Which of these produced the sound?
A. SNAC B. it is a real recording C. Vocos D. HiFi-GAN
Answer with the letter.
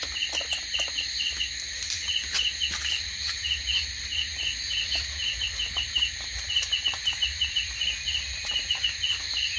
B